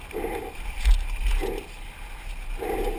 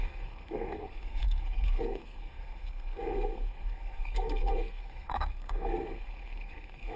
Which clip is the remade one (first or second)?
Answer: second